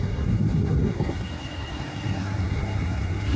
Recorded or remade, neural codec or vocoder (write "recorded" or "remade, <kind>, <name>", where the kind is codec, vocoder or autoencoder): remade, codec, SNAC